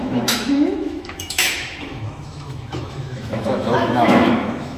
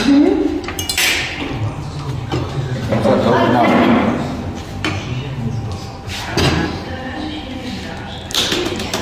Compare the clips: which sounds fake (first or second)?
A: first